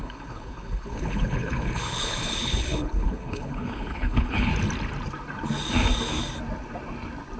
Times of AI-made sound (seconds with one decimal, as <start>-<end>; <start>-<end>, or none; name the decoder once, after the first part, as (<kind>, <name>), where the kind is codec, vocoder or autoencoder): 0.0-4.5 (codec, HILCodec)